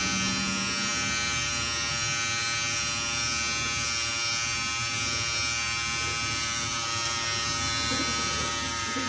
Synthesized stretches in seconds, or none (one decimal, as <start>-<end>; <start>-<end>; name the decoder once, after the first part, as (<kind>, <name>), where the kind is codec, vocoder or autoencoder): none